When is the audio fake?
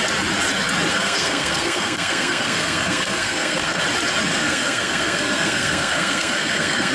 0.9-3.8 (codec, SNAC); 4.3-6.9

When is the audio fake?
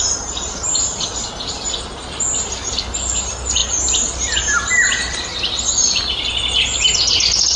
none